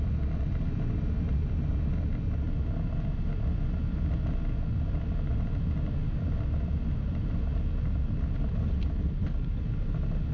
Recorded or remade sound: recorded